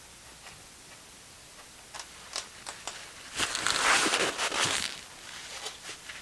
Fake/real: real